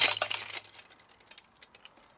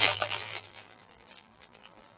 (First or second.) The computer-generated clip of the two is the second